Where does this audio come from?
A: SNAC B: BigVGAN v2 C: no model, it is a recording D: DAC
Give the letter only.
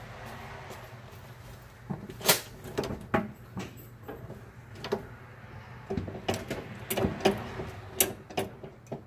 C